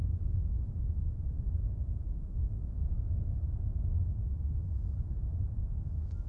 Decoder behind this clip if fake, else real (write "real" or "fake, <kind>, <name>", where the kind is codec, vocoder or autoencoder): fake, autoencoder, DAC-VAE